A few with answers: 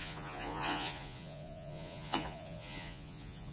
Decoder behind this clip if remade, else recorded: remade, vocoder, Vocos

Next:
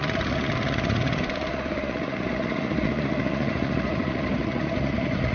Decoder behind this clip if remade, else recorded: remade, vocoder, Vocos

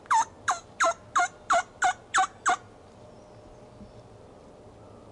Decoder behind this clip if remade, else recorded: recorded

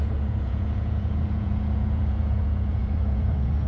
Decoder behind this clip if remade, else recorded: remade, vocoder, Vocos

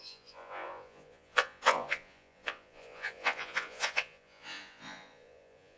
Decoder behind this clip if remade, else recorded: remade, vocoder, Vocos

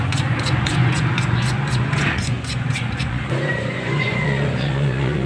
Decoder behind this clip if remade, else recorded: remade, vocoder, Vocos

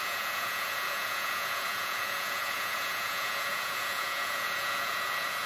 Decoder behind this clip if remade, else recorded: remade, vocoder, Vocos